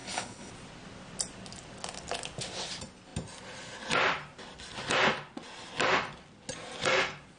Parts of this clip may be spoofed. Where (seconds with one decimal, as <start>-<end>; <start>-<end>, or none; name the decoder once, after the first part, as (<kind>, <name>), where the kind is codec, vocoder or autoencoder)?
0.0-0.5 (codec, HILCodec)